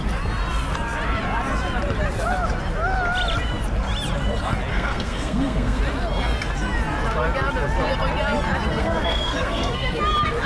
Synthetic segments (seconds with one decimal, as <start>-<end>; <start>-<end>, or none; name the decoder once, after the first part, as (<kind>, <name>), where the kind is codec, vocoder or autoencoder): 4.7-5.8 (codec, SNAC); 8.7-10.0